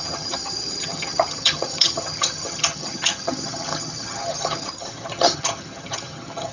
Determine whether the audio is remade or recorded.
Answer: remade